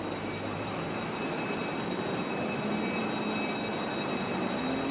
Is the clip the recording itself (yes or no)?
yes